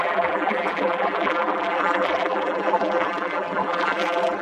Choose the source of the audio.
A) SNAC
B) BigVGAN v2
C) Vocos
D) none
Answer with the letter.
B